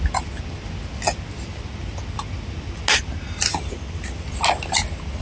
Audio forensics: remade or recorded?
recorded